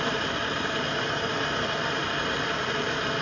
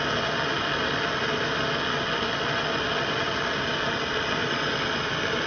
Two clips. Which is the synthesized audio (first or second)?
first